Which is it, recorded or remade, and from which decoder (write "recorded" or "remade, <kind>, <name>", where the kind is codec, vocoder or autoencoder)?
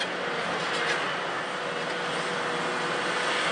recorded